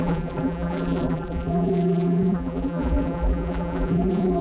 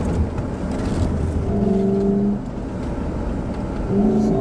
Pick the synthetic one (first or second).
first